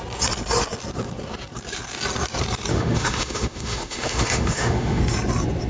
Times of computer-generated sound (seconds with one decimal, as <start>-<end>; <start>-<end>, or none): 2.7-5.0